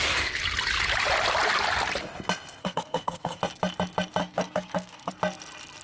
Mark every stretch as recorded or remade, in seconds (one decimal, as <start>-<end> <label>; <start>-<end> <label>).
0.0-2.6 recorded; 2.6-3.4 remade; 3.4-4.2 recorded; 4.2-5.1 remade; 5.1-5.8 recorded